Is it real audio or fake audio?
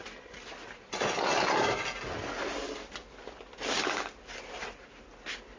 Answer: real